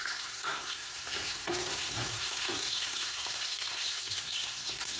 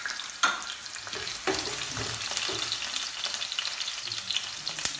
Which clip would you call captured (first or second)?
second